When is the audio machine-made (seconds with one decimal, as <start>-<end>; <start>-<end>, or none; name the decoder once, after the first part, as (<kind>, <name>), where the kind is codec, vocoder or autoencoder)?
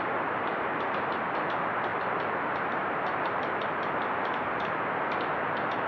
0.5-1.2 (vocoder, BigVGAN v2); 1.9-4.8